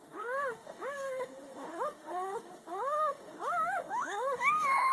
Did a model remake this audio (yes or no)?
yes